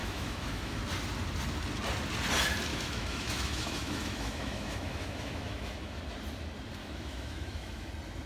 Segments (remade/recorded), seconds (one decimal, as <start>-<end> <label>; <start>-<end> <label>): 0.0-0.8 remade; 0.8-2.7 recorded; 2.7-6.0 remade; 6.0-6.8 recorded; 6.8-7.9 remade; 7.9-8.3 recorded